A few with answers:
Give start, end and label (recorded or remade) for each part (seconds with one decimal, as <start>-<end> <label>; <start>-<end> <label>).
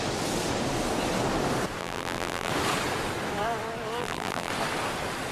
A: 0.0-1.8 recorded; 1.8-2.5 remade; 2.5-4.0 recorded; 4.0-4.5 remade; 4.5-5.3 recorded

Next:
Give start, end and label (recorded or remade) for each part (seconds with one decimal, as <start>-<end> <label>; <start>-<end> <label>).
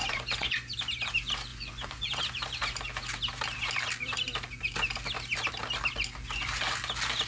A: 0.0-0.7 remade; 0.7-1.5 recorded; 1.5-2.2 remade; 2.2-7.3 recorded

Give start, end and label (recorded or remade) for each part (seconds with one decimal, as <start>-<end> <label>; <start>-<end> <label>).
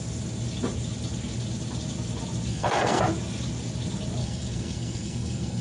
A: 0.0-2.5 recorded; 2.5-3.0 remade; 3.0-4.2 recorded; 4.2-5.6 remade